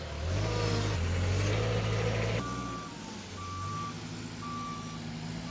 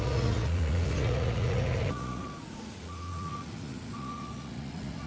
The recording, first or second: first